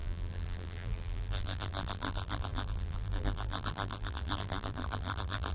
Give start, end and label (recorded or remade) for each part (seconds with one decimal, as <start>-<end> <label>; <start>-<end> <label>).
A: 0.0-5.5 remade